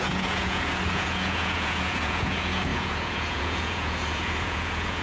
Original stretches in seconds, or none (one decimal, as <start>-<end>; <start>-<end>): none